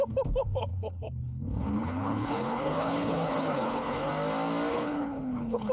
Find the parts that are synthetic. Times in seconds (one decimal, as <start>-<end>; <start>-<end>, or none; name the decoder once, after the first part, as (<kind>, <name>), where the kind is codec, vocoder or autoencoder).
0.7-4.1 (codec, HILCodec); 4.7-5.7